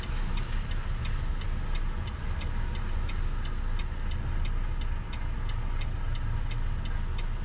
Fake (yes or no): no